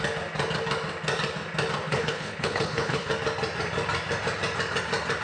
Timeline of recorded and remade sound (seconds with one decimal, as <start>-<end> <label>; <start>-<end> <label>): 0.0-1.9 recorded; 1.9-3.1 remade; 3.1-5.2 recorded